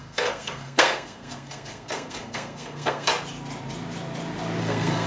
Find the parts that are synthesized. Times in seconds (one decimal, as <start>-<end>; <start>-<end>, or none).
0.0-3.1; 4.6-5.1